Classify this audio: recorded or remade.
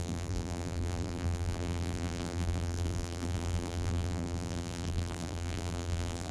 remade